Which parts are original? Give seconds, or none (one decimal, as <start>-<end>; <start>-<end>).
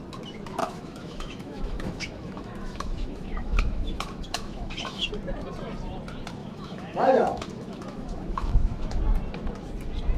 0.0-0.6; 5.1-6.4; 9.0-10.2